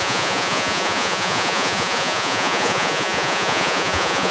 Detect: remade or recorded remade